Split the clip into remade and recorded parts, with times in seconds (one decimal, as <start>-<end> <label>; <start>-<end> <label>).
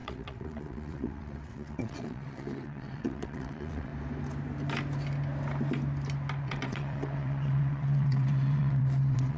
0.0-3.9 remade; 3.9-6.4 recorded; 6.4-9.4 remade